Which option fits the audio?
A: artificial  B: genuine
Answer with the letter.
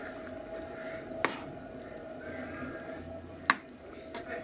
B